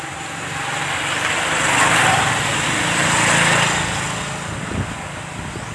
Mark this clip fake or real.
real